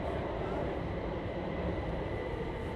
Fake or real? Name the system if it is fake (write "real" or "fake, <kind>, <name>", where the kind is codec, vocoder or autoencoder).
fake, vocoder, BigVGAN v2